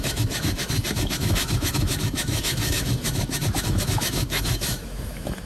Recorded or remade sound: remade